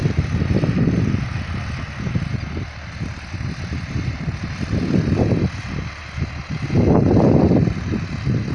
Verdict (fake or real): real